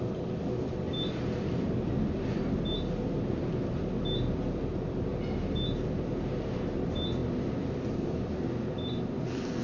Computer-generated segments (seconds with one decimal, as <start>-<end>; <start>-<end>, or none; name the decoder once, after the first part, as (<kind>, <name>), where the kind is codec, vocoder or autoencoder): none